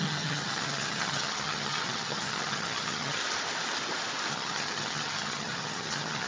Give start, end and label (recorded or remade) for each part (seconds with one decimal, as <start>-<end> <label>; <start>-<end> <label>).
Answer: 0.0-3.2 remade; 3.2-4.3 recorded; 4.3-6.3 remade